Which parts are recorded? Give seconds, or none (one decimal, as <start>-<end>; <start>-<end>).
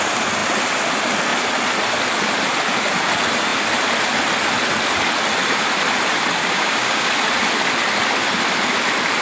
0.0-6.4; 7.1-9.2